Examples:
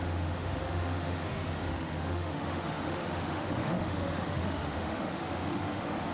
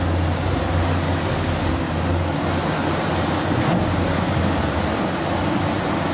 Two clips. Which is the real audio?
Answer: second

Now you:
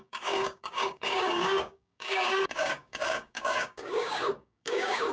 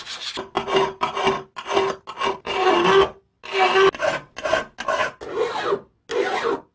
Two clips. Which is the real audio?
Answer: second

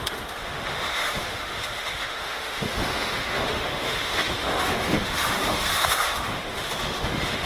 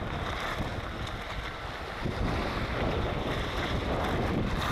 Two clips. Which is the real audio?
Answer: second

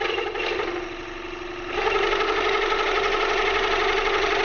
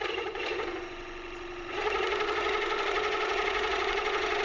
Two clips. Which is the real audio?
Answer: first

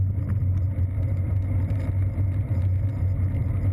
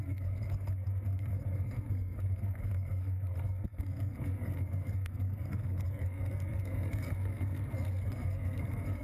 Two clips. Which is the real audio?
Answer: first